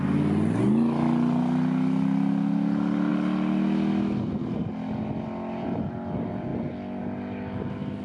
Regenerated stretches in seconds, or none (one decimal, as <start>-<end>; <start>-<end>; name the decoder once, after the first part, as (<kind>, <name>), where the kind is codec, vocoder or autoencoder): none